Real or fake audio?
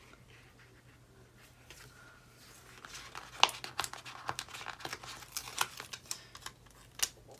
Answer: real